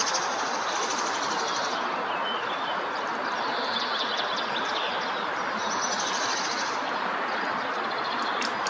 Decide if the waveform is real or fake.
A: real